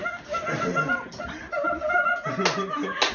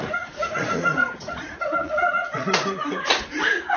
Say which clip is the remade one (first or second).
second